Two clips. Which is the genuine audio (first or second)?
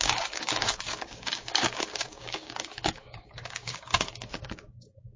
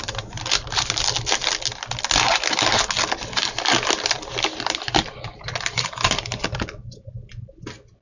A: second